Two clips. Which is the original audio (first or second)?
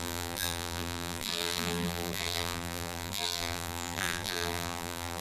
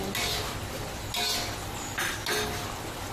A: second